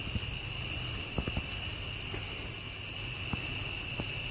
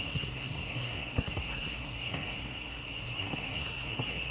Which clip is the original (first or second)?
first